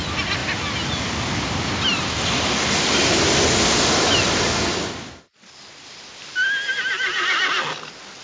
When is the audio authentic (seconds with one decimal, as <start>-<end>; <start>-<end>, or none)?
0.0-8.2